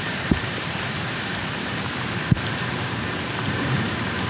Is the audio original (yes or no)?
no